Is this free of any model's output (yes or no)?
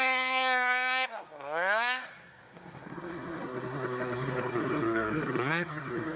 no